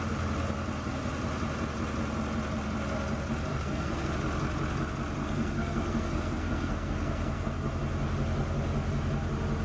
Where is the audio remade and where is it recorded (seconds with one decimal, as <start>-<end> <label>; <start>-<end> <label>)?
0.0-3.5 recorded; 3.5-4.1 remade; 4.1-5.2 recorded; 5.2-7.7 remade; 7.7-9.6 recorded